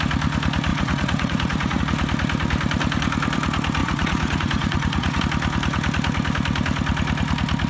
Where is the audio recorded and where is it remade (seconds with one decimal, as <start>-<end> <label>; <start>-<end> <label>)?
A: 0.0-0.7 recorded; 0.7-1.8 remade; 1.8-3.8 recorded; 3.8-5.2 remade; 5.2-7.7 recorded